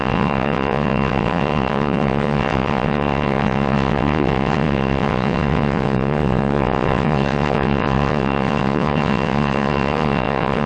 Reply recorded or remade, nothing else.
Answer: remade